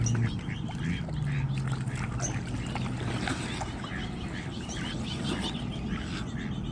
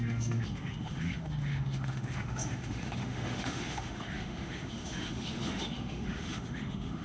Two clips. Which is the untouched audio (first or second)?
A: first